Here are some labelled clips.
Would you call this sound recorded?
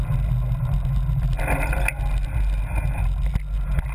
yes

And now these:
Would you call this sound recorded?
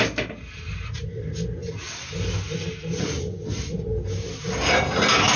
yes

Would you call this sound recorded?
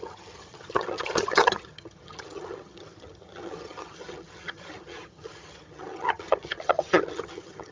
no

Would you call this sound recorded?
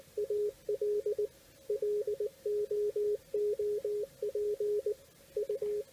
yes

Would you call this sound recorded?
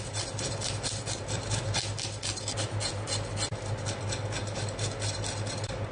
yes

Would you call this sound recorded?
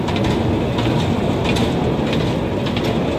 yes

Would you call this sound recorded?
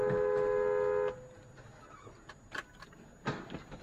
yes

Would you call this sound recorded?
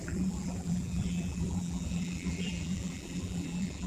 no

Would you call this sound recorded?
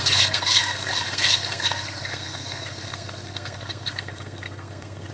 no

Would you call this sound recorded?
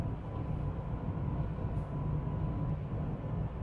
yes